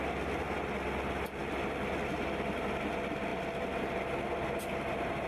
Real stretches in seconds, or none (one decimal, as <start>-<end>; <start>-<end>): 0.0-5.3